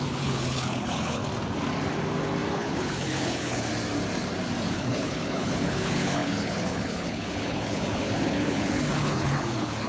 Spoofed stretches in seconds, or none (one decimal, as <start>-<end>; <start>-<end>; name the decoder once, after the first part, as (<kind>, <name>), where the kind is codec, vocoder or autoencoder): 0.0-1.2 (codec, HILCodec); 2.5-3.7; 4.6-9.9